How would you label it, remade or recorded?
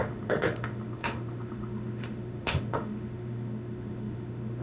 remade